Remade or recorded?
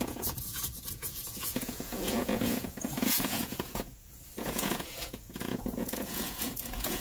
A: remade